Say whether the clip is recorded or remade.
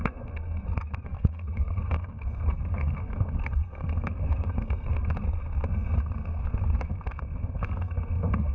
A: remade